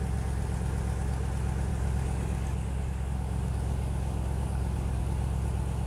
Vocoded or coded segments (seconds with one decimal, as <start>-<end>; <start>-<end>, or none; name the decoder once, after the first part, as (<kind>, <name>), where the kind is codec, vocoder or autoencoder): 1.7-5.0 (codec, DAC)